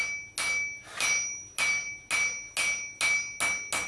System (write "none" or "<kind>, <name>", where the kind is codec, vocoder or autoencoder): none